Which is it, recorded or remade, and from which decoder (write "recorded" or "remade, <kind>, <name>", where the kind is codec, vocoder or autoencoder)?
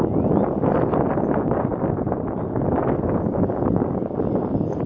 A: recorded